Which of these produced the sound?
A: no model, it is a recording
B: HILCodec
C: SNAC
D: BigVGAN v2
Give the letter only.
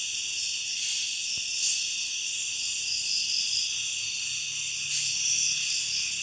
A